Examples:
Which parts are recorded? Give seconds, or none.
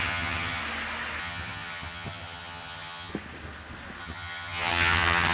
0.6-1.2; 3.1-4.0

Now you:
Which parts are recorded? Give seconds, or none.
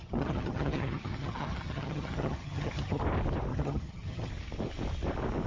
3.0-3.5; 4.3-5.5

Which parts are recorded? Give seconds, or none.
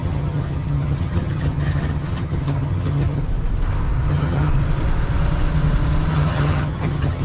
3.2-4.1; 4.5-6.1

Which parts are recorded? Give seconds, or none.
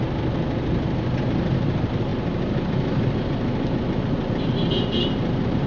0.0-5.7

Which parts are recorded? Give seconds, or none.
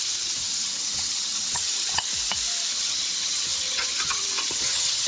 2.1-2.7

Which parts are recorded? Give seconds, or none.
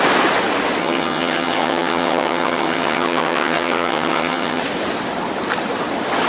0.0-0.8; 4.6-6.3